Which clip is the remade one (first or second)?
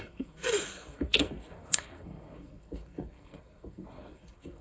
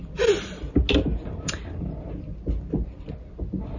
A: first